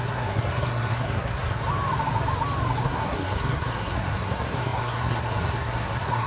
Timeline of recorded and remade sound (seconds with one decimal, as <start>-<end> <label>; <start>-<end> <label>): 0.0-1.6 remade; 1.6-2.8 recorded; 2.8-6.3 remade